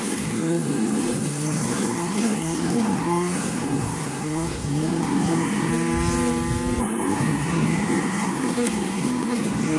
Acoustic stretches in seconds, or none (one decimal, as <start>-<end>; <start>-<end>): 5.7-6.8